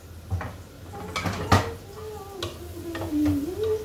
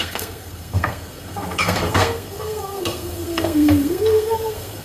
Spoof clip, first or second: second